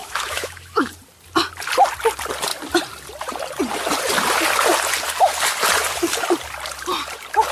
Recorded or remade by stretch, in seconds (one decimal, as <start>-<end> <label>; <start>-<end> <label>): 0.0-0.9 remade; 0.9-7.5 recorded